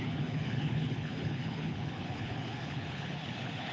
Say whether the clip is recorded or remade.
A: remade